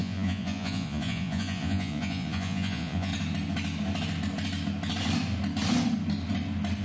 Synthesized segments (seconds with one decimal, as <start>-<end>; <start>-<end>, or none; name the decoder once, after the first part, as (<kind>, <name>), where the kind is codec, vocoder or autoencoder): 0.0-3.1 (vocoder, Vocos)